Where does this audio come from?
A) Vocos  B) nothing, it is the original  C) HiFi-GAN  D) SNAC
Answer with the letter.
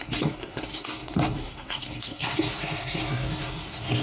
D